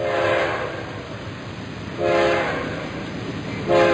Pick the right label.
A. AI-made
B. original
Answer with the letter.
B